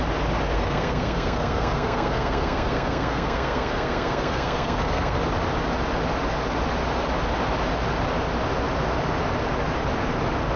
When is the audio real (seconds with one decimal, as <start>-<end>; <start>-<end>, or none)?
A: 0.0-0.5; 5.2-10.6